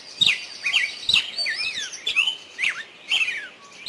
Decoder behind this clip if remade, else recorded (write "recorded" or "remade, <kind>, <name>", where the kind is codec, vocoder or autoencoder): recorded